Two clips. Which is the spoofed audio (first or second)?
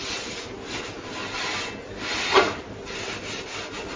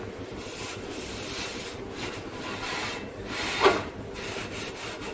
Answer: second